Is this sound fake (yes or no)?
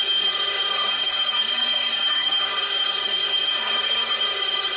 yes